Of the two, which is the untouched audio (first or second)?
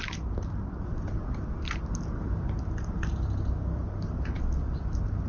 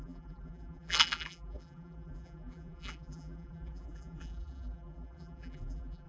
first